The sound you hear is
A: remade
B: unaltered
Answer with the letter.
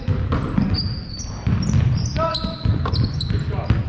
B